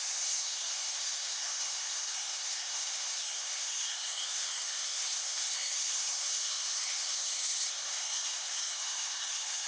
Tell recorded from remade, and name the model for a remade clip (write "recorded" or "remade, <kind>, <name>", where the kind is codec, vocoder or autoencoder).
remade, codec, SNAC